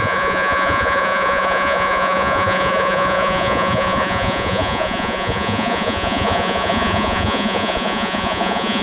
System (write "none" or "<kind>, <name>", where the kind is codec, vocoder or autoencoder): vocoder, Vocos